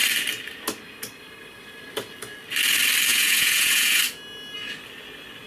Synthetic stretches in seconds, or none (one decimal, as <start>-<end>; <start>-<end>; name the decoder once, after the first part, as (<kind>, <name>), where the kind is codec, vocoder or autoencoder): 3.1-4.0 (vocoder, Vocos)